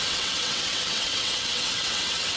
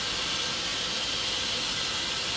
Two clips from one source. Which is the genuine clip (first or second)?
second